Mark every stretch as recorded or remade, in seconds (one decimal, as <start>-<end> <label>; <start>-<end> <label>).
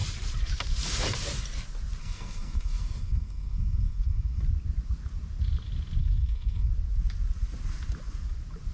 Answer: 0.0-2.0 recorded; 2.0-4.4 remade; 4.4-6.0 recorded; 6.0-6.7 remade; 6.7-8.7 recorded